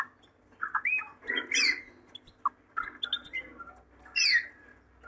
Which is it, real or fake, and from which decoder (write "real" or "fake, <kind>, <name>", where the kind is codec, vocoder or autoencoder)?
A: real